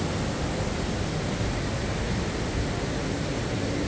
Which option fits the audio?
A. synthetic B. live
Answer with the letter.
B